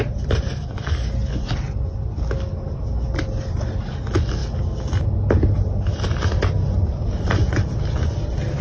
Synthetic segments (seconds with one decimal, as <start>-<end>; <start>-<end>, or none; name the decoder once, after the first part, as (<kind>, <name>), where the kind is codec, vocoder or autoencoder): none